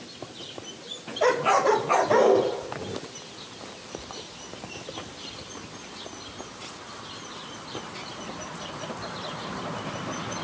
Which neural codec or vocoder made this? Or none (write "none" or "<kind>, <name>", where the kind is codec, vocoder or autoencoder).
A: none